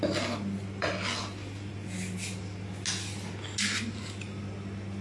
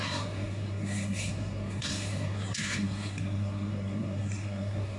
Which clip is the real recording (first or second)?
first